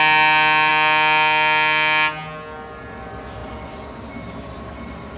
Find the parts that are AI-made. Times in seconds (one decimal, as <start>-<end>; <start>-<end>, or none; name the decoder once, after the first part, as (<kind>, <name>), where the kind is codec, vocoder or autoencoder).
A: none